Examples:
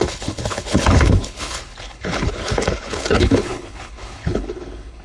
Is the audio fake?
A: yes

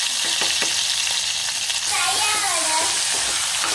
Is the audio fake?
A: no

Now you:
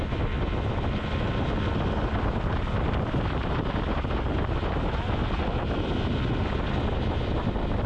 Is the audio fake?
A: no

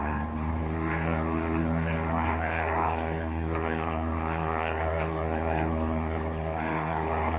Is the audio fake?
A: yes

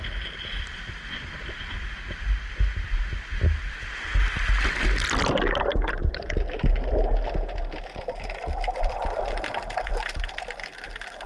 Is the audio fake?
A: no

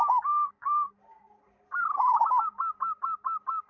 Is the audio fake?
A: no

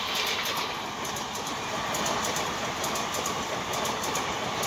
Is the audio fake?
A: no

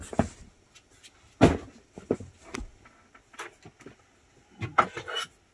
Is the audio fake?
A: no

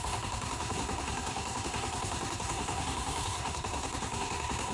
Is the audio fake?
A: yes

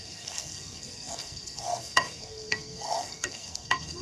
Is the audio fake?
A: yes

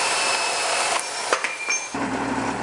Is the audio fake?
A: yes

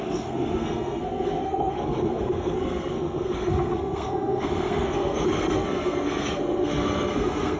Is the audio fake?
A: yes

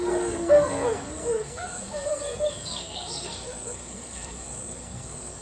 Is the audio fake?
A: yes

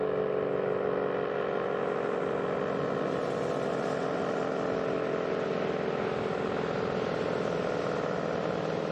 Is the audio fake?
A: no